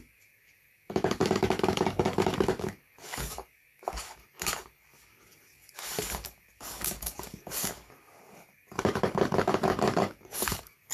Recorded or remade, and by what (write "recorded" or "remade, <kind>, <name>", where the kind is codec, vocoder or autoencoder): remade, codec, DAC